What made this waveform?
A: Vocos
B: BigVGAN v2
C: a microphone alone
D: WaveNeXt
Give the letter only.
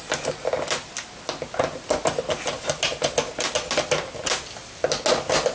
C